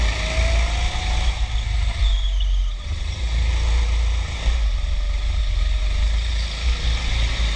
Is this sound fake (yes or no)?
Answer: no